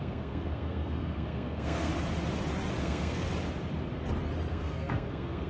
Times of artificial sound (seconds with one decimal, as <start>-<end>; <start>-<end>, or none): 0.0-1.9; 2.8-3.3; 4.5-5.5